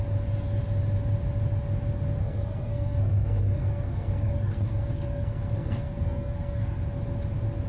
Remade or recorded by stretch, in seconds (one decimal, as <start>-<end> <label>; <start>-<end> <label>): 0.0-2.2 recorded; 2.2-6.8 remade; 6.8-7.7 recorded